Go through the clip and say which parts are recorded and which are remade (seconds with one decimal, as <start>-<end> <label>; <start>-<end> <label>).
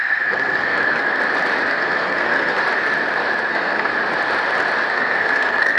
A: 0.0-1.2 remade; 1.2-1.7 recorded; 1.7-2.6 remade; 2.6-3.5 recorded; 3.5-3.9 remade; 3.9-4.9 recorded; 4.9-5.8 remade